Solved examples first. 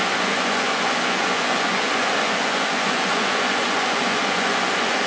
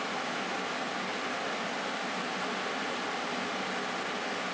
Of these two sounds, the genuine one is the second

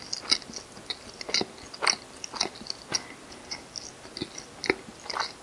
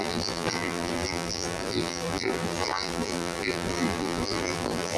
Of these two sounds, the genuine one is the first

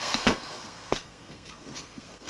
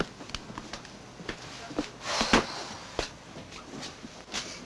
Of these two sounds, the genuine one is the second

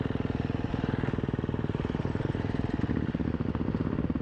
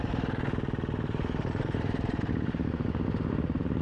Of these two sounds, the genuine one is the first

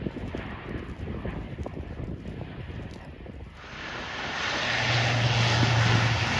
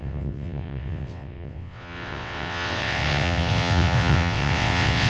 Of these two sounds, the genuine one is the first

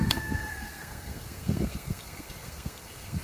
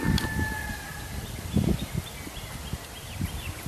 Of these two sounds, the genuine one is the second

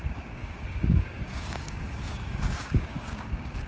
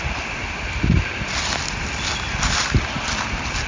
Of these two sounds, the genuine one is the second